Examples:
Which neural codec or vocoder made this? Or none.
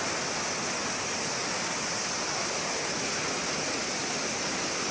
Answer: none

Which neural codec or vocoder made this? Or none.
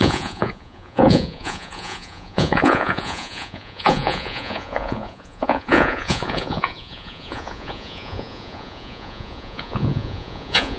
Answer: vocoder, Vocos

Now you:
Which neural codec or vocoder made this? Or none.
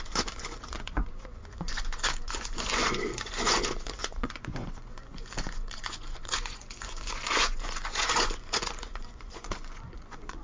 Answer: vocoder, Vocos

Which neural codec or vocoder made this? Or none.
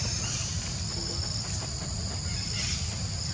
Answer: none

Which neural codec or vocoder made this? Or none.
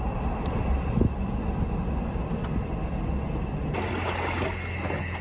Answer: none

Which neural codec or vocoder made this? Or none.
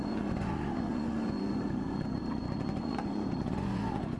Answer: vocoder, Vocos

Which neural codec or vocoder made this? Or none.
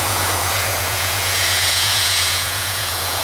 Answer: vocoder, Vocos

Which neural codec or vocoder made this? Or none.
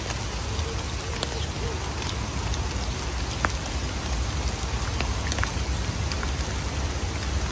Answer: none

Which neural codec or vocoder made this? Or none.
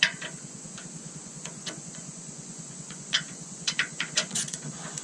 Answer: vocoder, Vocos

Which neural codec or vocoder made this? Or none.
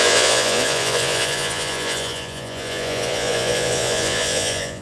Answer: vocoder, Vocos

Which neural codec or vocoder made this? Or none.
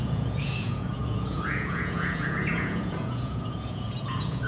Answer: vocoder, Vocos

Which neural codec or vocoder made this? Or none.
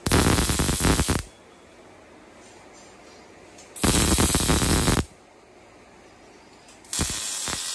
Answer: none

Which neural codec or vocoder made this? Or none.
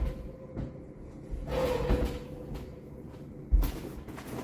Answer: vocoder, Vocos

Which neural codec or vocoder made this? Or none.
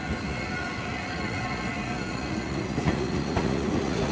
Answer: vocoder, Vocos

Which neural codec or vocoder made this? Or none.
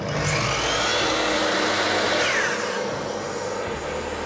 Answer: none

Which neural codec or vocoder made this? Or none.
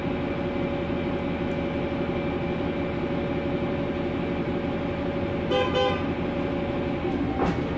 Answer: none